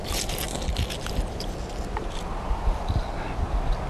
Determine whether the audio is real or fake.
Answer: real